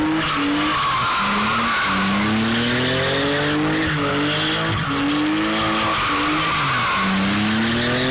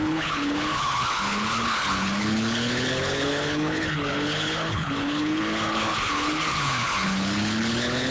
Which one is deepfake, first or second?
second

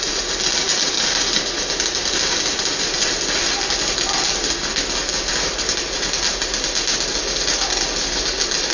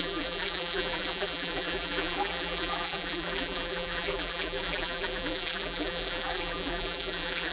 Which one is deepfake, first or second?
second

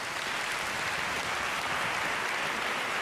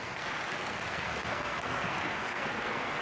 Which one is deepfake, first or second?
second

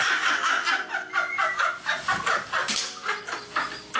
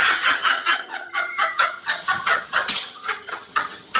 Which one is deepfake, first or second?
second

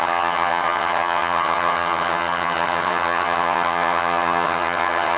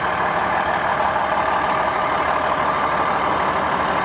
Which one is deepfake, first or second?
first